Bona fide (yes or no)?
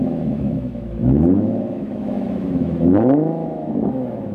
no